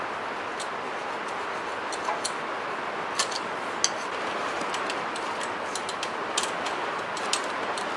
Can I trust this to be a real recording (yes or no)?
yes